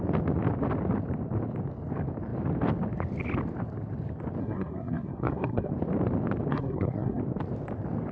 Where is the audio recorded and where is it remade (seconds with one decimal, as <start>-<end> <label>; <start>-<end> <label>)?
0.0-4.4 recorded; 4.4-5.7 remade; 5.7-6.5 recorded; 6.5-7.2 remade; 7.2-8.1 recorded